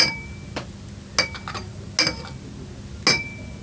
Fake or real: real